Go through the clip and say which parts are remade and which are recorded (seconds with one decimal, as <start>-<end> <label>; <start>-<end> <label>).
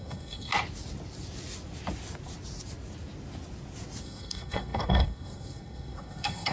0.0-0.5 remade; 0.5-4.0 recorded; 4.0-6.5 remade